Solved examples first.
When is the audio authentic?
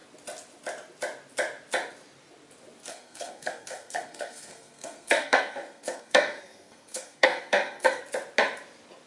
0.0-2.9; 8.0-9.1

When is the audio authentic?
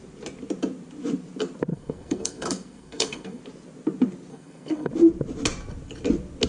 0.0-1.7; 3.4-4.3; 4.9-6.5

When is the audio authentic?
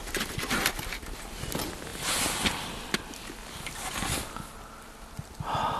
0.0-5.8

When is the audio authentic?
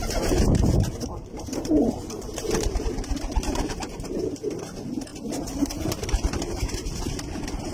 4.1-5.1; 7.0-7.7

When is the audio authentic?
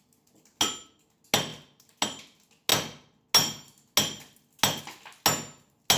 0.0-6.0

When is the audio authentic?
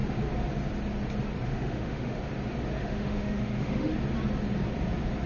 0.0-1.5; 2.2-2.8; 3.9-5.3